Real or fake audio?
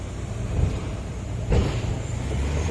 fake